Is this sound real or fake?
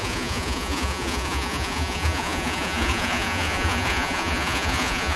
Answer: fake